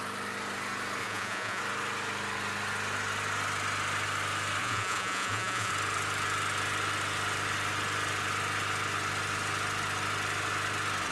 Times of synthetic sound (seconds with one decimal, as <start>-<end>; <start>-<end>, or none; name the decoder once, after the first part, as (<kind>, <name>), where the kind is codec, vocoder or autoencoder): 1.0-1.6 (vocoder, Vocos); 4.6-5.7

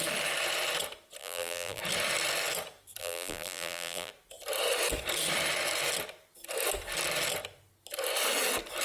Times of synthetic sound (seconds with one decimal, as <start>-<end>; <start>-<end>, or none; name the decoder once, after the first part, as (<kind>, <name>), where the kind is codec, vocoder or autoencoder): 1.2-1.8 (vocoder, BigVGAN v2); 3.0-4.1

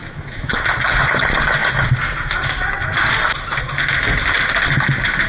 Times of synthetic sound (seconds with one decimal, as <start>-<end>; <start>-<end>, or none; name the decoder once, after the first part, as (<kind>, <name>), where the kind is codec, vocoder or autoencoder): 0.0-0.5 (autoencoder, DAC-VAE)

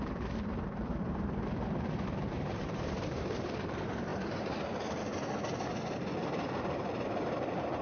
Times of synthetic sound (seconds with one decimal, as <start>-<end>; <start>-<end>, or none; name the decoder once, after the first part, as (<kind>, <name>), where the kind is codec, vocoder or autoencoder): 0.0-5.1 (vocoder, BigVGAN v2); 6.7-7.8

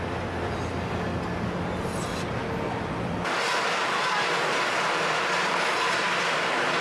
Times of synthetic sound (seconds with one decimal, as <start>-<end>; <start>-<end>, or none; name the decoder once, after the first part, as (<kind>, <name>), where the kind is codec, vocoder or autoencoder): none